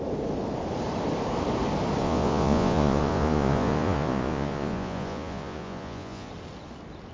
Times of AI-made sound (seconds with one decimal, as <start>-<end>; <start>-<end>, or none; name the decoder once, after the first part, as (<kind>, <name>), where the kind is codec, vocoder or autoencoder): 2.0-6.3 (vocoder, Vocos)